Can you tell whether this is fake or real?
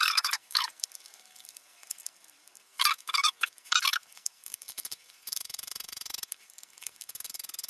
fake